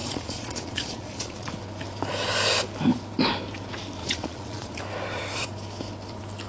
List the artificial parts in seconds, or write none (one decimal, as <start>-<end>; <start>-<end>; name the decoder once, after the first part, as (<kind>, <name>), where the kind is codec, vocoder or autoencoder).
0.0-1.5 (vocoder, Vocos); 4.0-4.8